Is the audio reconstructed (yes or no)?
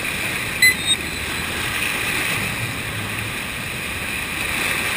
no